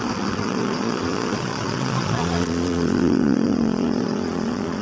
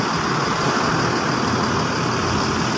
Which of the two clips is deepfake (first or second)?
first